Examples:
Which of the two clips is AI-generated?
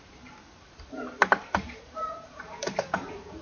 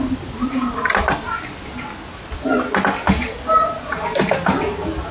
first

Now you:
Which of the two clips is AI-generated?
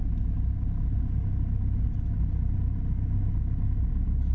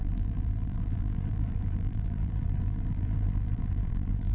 second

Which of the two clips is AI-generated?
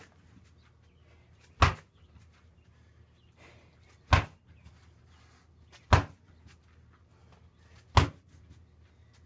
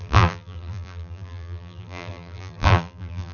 second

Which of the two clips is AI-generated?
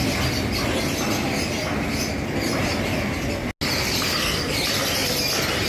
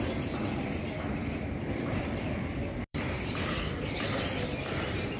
second